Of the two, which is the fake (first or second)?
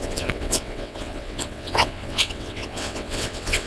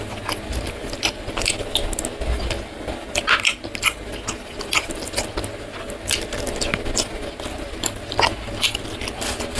first